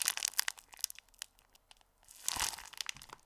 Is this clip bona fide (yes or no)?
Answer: yes